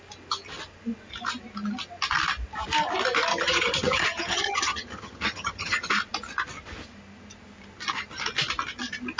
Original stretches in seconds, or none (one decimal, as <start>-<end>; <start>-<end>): 0.0-3.3; 5.9-9.2